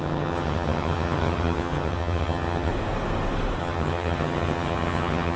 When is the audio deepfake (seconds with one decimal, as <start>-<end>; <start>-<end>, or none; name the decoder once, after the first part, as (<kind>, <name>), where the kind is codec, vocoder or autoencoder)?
0.0-2.7 (vocoder, HiFi-GAN); 3.6-5.4